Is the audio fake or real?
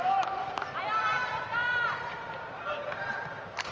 fake